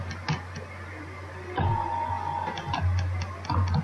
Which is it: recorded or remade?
recorded